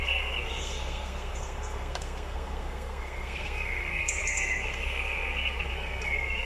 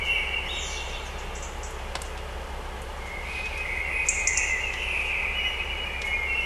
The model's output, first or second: first